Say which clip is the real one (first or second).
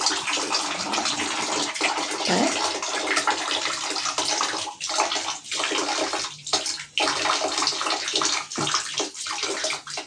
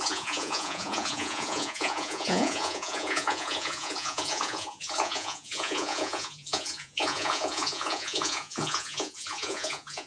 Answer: first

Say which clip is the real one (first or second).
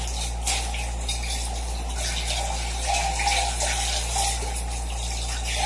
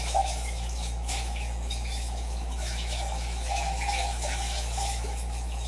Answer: first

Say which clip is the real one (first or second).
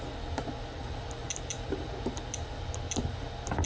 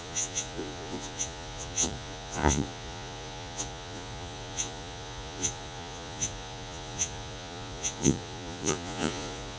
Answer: first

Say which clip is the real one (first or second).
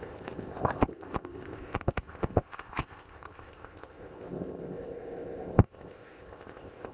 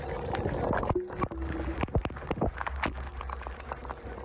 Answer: second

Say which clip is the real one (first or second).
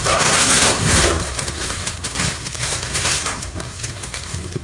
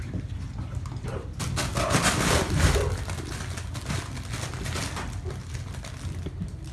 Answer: second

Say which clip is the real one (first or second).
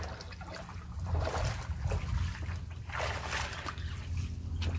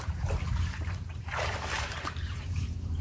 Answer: first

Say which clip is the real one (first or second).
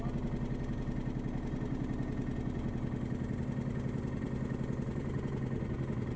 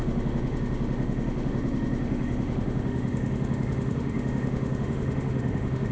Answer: first